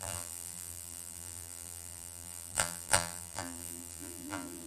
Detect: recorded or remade remade